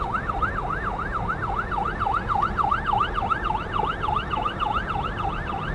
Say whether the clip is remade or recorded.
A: recorded